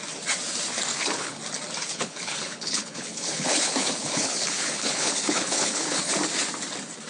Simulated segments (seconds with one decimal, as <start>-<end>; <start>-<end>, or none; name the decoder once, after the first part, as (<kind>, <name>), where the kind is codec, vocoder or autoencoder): 0.9-1.4 (codec, HILCodec); 1.8-6.1